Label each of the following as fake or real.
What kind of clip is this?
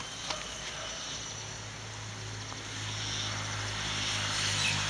real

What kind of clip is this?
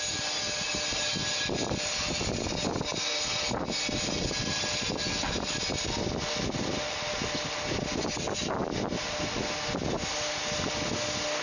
real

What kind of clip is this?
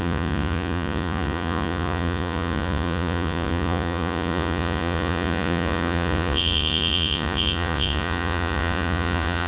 fake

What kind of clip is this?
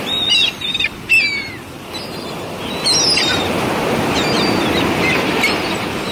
real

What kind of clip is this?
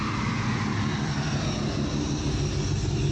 real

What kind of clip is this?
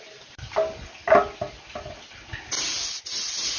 real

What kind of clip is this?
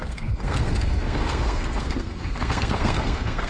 fake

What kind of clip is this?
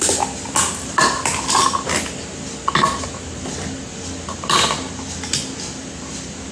real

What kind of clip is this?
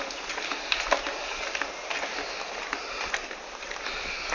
real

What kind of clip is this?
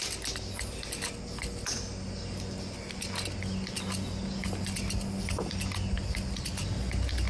real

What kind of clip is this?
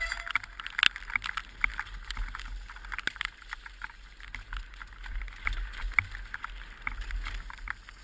real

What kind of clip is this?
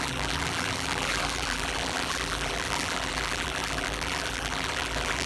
fake